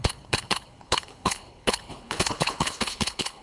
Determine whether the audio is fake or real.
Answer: fake